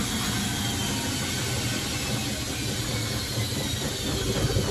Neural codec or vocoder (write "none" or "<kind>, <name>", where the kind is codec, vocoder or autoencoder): none